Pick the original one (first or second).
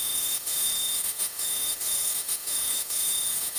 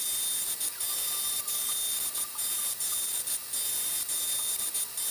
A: second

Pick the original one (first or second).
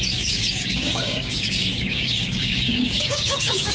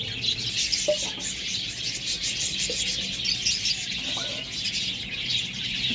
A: second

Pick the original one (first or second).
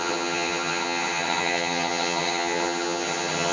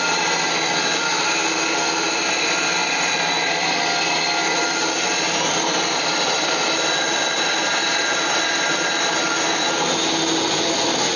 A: second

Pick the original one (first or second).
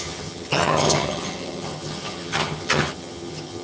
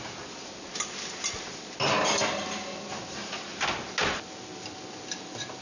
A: second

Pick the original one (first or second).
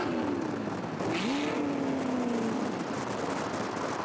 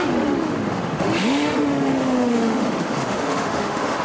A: first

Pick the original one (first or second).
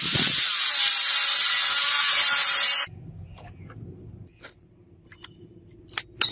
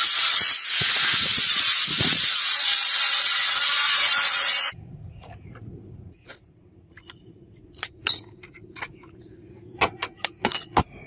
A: first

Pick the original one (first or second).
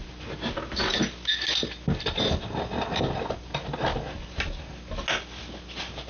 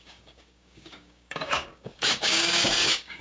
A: first